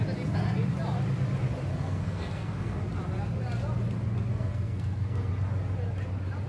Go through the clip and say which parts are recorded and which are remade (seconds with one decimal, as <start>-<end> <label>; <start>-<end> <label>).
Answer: 0.0-1.7 recorded; 1.7-2.8 remade; 2.8-4.3 recorded; 4.3-5.3 remade; 5.3-6.5 recorded

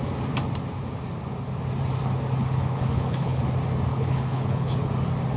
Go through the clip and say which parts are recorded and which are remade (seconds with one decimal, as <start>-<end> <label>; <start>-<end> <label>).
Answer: 0.0-2.4 recorded; 2.4-3.4 remade; 3.4-3.9 recorded; 3.9-4.9 remade; 4.9-5.4 recorded

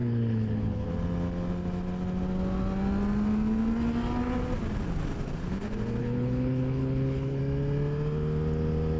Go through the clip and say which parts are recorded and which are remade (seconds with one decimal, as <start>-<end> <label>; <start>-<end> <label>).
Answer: 0.0-0.9 remade; 0.9-6.0 recorded; 6.0-7.4 remade; 7.4-9.0 recorded

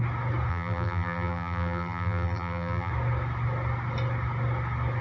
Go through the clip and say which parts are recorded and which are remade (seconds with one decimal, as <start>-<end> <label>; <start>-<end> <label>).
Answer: 0.0-0.5 recorded; 0.5-2.9 remade; 2.9-5.0 recorded

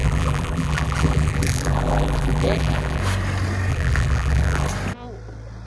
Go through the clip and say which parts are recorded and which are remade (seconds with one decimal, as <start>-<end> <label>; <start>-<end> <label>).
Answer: 0.0-3.0 remade; 3.0-3.7 recorded; 3.7-4.7 remade; 4.7-5.7 recorded

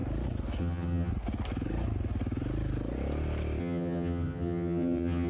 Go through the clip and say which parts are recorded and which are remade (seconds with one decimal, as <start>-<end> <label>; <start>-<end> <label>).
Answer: 0.0-0.6 recorded; 0.6-1.1 remade; 1.1-3.6 recorded; 3.6-5.3 remade